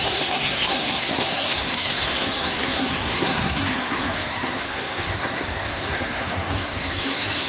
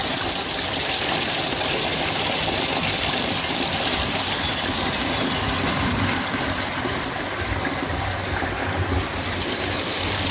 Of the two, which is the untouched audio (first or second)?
second